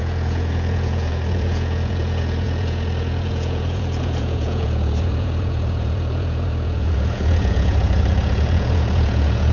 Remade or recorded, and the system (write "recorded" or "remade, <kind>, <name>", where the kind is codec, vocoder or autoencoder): remade, vocoder, Vocos